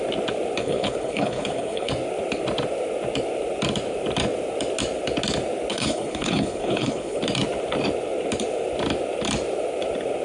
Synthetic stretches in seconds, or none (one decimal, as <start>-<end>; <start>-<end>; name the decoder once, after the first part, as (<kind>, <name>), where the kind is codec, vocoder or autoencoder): 0.6-1.9 (codec, HILCodec); 5.7-7.2